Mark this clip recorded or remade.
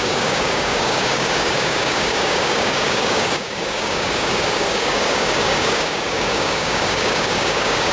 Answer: remade